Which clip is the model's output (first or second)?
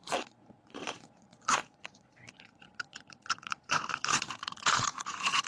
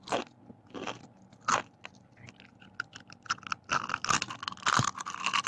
first